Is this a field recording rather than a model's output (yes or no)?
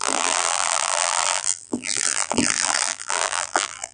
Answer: no